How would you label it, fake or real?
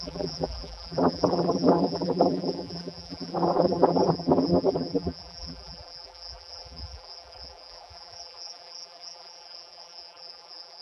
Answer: fake